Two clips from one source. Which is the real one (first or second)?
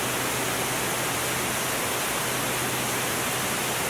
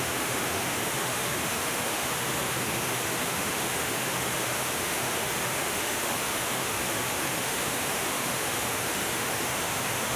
first